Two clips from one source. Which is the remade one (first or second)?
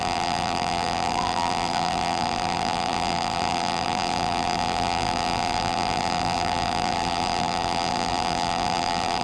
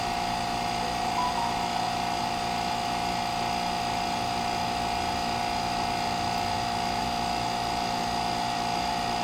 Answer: first